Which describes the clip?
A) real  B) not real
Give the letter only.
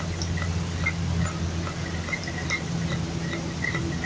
A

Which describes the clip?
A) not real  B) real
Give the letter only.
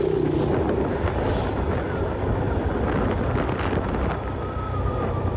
B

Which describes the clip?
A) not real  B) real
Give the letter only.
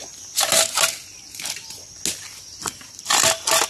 B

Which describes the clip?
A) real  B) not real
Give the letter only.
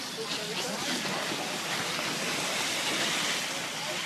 A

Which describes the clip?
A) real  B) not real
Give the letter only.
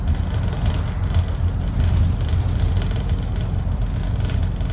A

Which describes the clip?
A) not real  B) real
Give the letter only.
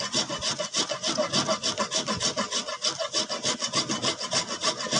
B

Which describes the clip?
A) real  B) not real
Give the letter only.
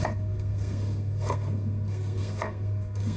B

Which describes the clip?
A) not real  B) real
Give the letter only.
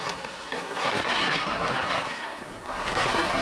A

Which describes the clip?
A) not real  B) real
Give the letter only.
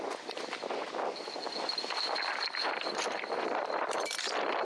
B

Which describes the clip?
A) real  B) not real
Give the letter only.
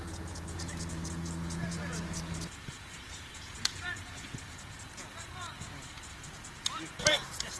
B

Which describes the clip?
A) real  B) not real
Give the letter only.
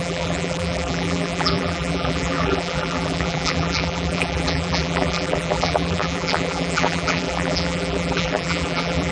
B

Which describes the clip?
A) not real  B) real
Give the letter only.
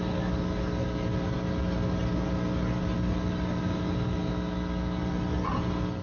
B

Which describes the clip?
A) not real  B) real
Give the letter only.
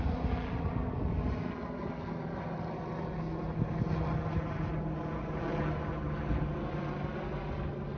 B